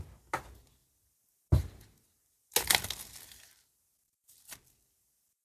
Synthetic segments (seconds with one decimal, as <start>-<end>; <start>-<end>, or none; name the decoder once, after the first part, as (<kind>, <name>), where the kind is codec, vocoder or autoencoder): none